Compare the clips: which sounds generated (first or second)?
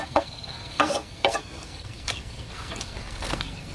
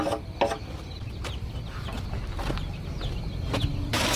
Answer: first